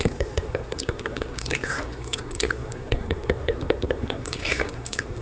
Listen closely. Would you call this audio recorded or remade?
remade